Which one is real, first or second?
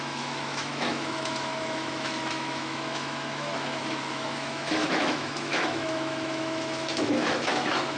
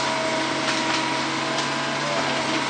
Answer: second